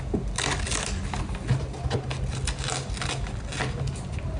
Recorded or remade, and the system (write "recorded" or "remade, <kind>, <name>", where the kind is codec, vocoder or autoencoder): recorded